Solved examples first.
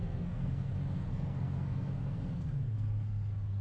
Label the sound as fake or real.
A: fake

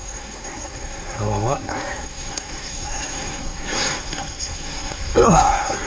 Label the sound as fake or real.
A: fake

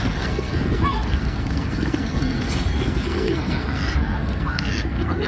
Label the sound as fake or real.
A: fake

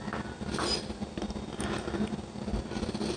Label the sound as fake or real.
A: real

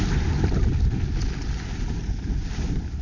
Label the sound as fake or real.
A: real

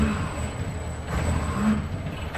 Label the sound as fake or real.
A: real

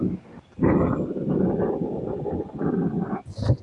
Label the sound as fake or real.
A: real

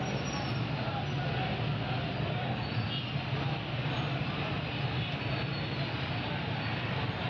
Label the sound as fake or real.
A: real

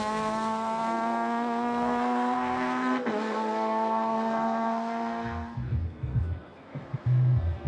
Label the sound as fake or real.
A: fake